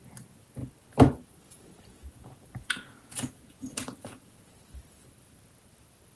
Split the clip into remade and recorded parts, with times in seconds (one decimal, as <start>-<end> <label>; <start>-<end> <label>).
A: 0.0-1.9 recorded; 1.9-4.5 remade; 4.5-6.2 recorded